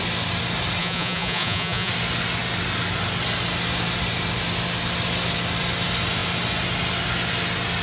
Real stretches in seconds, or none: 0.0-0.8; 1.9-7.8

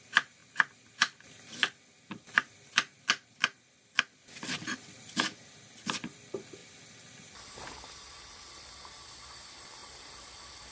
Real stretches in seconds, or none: 0.0-10.7

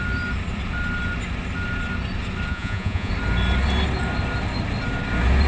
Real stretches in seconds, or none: 0.0-2.5; 3.1-5.5

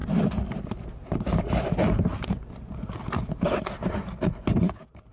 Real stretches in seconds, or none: 4.0-5.1

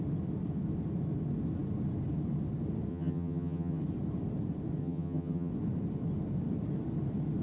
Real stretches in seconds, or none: 0.0-2.9; 3.8-4.8; 5.5-7.4

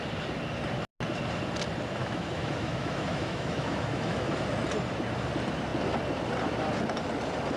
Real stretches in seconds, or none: 0.0-2.0; 4.3-7.6